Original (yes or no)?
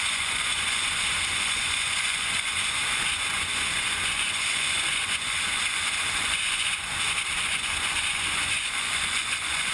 no